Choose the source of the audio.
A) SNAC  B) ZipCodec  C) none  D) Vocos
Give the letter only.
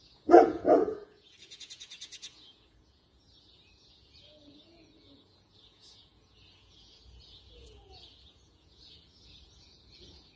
D